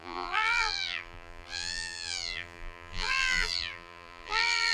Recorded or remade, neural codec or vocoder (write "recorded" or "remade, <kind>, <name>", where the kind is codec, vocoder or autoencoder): remade, vocoder, BigVGAN v2